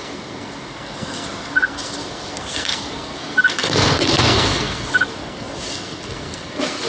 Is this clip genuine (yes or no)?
no